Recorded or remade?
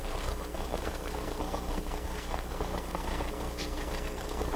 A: remade